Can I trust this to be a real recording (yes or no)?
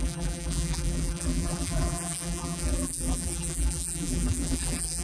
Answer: no